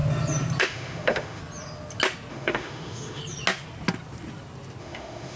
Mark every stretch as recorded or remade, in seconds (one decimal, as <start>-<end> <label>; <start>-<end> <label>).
0.0-0.6 recorded; 0.6-1.4 remade; 1.4-2.3 recorded; 2.3-3.2 remade; 3.2-4.8 recorded; 4.8-5.4 remade